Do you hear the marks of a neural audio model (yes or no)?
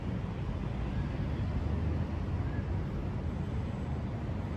no